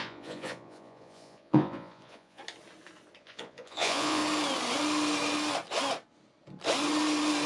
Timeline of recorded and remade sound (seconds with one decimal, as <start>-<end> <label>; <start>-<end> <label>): 0.0-2.4 remade; 2.4-3.2 recorded; 3.2-4.2 remade; 4.2-7.5 recorded